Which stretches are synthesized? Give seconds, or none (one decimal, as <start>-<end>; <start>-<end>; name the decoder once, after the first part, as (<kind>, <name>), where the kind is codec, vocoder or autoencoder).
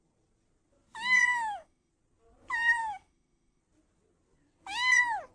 1.3-1.9 (autoencoder, DAC-VAE); 2.8-3.6